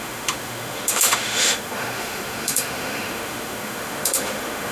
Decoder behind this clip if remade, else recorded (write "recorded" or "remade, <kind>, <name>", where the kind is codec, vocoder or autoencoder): remade, autoencoder, DAC-VAE